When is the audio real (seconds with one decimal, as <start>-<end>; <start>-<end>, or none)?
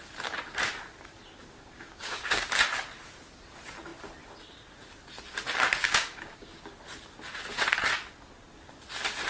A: 0.0-1.4; 2.4-5.8; 6.6-9.3